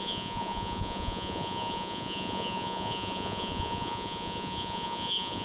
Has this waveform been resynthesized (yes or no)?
yes